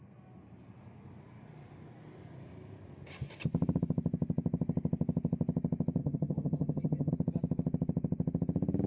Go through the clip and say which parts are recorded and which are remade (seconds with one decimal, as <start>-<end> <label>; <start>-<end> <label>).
0.0-6.0 recorded; 6.0-7.1 remade; 7.1-8.9 recorded